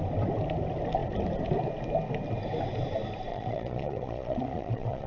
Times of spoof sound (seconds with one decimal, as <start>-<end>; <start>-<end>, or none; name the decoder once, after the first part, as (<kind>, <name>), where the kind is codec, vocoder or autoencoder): 3.3-5.1 (vocoder, Vocos)

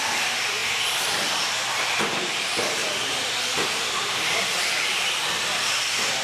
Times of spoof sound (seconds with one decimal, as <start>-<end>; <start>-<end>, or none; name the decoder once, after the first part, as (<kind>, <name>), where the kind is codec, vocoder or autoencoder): 0.0-0.6 (vocoder, BigVGAN v2); 1.5-2.8; 3.8-6.2